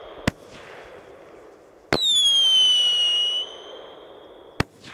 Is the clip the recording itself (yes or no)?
yes